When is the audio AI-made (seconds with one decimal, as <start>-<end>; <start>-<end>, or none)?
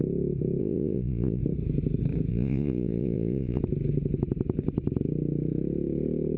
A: 0.6-1.4; 2.3-3.6